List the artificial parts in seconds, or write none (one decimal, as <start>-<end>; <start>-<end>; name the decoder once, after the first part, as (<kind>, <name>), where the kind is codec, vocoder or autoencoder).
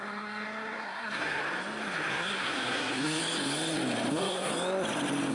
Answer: 0.0-1.4 (codec, SNAC); 2.1-3.2; 4.1-4.5